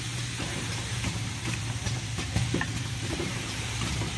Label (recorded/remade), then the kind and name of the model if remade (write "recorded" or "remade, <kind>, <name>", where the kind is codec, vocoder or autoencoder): remade, vocoder, BigVGAN v2